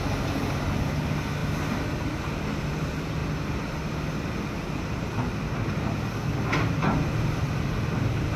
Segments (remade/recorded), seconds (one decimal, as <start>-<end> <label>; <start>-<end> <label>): 0.0-8.4 recorded